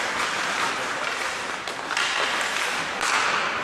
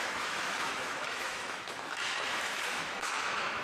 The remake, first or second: second